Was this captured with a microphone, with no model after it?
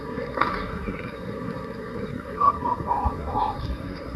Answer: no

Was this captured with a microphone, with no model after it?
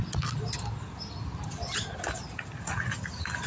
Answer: yes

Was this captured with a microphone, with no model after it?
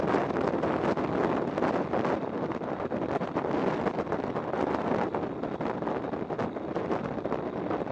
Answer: yes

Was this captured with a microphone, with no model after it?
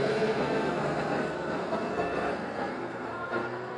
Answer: no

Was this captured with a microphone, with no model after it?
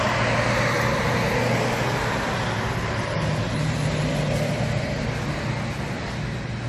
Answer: yes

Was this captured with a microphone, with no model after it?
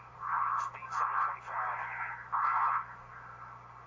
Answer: yes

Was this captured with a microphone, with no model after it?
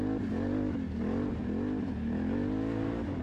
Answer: yes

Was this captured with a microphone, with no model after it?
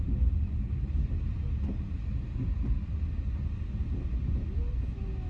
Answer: yes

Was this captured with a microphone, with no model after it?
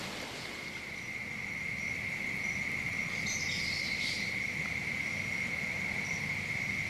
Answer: yes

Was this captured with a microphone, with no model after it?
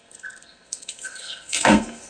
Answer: no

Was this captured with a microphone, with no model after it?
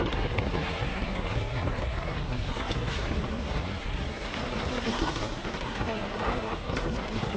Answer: no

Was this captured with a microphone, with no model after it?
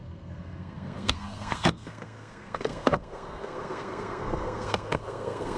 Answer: no